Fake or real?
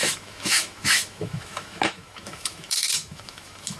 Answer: fake